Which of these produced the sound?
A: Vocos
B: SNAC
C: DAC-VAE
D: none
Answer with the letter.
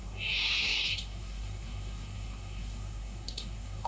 B